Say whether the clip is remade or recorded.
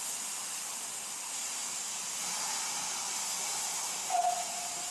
recorded